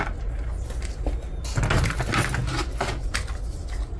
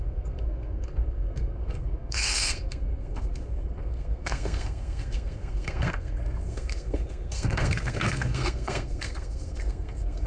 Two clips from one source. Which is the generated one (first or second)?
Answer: second